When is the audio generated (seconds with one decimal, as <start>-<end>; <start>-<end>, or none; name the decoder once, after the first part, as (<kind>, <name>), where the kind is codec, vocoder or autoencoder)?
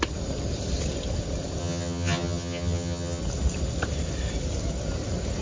1.6-3.2 (vocoder, HiFi-GAN)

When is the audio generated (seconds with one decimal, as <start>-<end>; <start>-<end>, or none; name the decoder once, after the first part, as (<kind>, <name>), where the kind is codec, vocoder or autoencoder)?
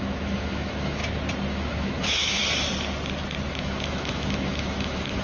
0.0-1.0 (autoencoder, DAC-VAE); 1.5-2.4; 3.5-5.2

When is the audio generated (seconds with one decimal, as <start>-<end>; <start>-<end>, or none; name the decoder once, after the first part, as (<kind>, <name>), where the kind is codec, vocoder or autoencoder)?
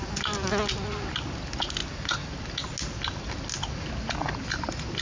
none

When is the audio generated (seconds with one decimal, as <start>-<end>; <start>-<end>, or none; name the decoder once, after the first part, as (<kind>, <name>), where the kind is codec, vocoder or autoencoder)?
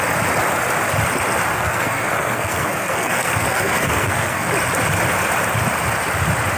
1.5-4.5 (codec, SNAC)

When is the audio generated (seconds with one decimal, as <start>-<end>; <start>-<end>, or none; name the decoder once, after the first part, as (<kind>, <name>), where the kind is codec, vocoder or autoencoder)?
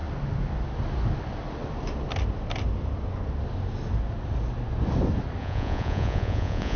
5.4-6.8 (vocoder, Vocos)